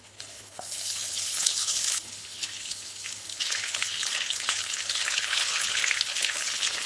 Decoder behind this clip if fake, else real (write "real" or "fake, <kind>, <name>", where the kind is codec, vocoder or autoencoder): fake, codec, HILCodec